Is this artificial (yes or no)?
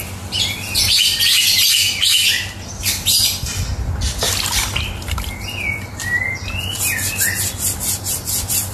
no